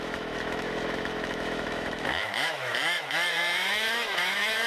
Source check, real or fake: fake